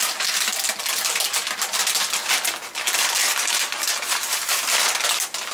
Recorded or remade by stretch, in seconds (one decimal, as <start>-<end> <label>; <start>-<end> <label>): 0.0-3.3 recorded; 3.3-4.6 remade; 4.6-5.5 recorded